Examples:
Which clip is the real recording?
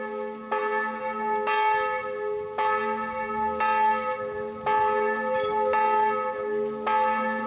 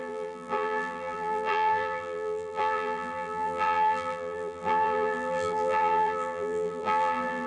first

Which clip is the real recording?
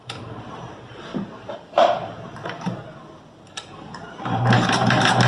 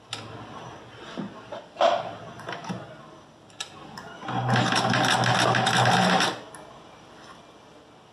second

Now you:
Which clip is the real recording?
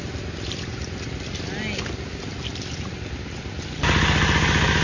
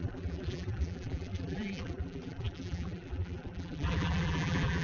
first